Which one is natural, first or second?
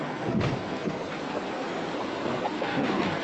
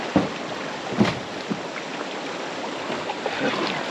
second